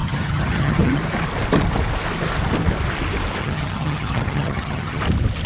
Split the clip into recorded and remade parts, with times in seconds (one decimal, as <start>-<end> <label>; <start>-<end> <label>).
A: 0.0-1.0 remade; 1.0-3.4 recorded; 3.4-5.0 remade; 5.0-5.5 recorded